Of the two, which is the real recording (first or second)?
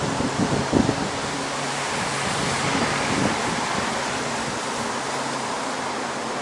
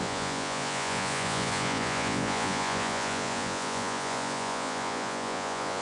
first